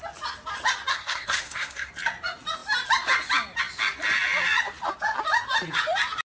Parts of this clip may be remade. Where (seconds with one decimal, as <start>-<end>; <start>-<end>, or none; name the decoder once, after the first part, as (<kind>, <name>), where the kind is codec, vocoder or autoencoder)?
0.9-1.9 (codec, SNAC)